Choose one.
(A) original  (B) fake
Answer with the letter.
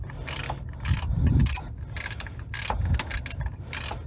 A